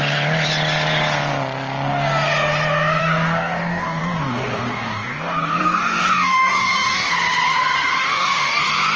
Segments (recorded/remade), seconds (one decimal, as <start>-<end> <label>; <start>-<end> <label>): 0.0-3.0 recorded; 3.0-7.1 remade; 7.1-8.0 recorded; 8.0-8.6 remade; 8.6-9.0 recorded